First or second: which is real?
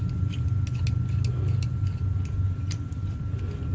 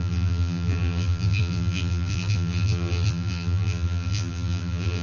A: first